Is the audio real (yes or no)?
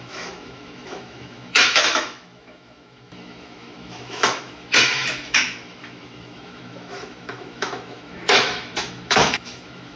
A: no